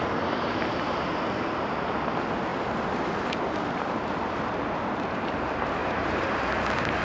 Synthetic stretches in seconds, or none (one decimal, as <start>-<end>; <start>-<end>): 0.0-1.9; 2.5-3.9; 5.8-6.5